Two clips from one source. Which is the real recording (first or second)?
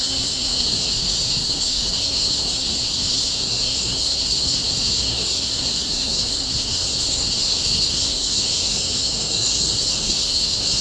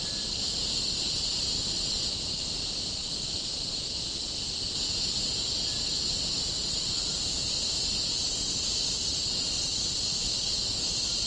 second